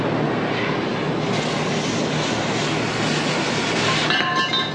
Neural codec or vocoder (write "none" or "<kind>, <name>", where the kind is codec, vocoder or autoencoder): none